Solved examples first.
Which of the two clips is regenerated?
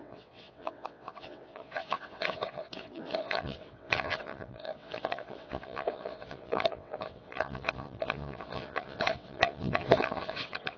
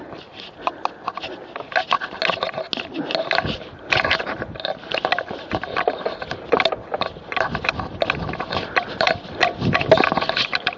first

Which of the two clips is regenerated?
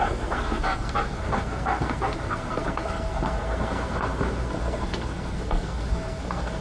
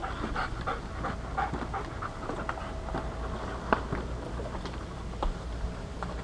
first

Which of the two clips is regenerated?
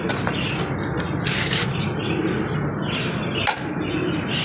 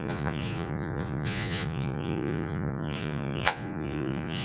second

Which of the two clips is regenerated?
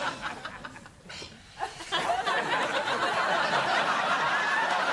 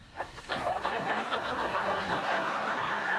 second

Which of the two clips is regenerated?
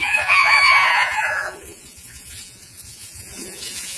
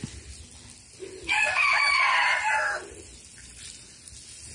first